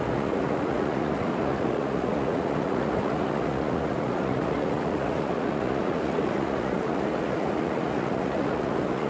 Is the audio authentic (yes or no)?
no